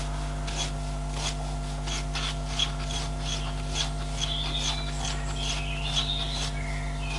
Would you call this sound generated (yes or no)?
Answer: no